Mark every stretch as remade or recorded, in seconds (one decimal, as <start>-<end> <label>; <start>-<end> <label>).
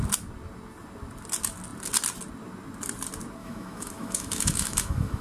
0.0-3.4 recorded; 3.4-5.2 remade